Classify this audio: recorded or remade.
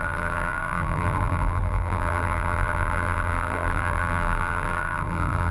remade